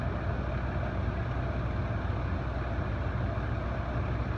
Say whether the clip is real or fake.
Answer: real